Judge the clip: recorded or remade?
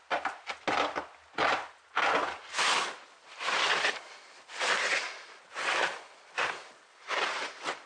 recorded